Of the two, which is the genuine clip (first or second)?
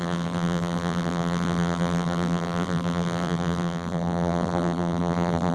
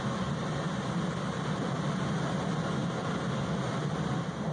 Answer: second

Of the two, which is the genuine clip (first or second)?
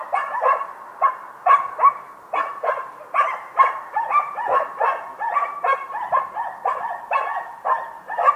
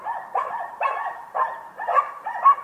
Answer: first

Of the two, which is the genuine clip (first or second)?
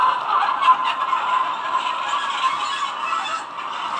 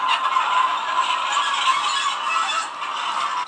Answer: second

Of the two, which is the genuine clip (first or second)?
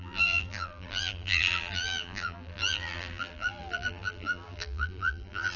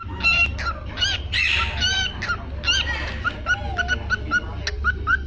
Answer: second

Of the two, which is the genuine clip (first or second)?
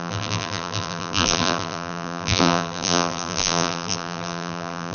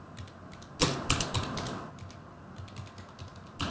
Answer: second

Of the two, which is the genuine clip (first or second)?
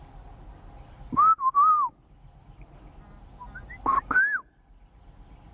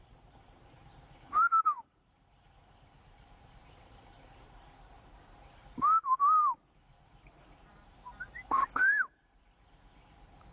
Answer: first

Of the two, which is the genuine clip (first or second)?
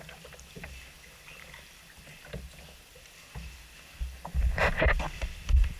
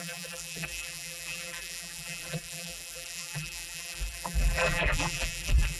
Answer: first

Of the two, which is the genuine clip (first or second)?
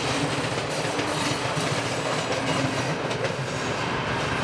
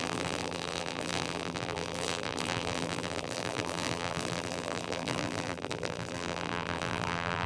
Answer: first